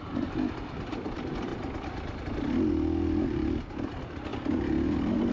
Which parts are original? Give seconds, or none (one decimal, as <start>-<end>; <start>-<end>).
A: 0.0-5.3